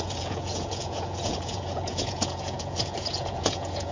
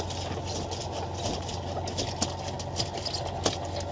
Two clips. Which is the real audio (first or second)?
second